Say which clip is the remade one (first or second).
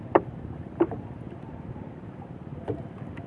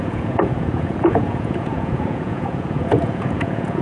second